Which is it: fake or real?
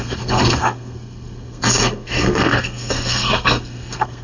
fake